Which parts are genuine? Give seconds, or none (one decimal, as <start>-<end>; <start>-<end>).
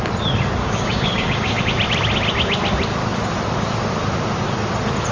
0.0-0.6; 1.6-5.1